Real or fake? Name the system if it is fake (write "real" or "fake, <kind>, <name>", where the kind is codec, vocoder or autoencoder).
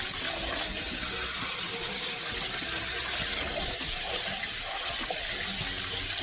real